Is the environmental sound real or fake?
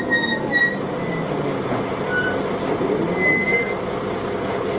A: real